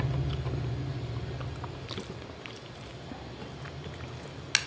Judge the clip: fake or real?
real